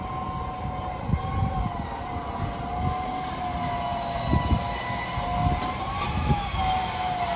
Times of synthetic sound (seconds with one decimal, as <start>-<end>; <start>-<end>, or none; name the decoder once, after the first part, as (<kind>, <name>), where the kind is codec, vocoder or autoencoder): none